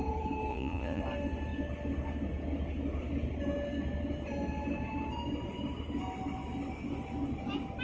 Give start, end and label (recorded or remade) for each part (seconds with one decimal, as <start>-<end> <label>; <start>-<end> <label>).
0.0-0.5 recorded; 0.5-1.0 remade; 1.0-7.8 recorded